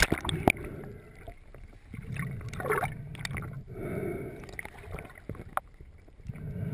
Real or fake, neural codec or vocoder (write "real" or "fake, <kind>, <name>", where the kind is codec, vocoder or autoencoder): real